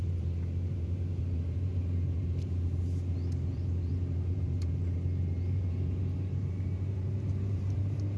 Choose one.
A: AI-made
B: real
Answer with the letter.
A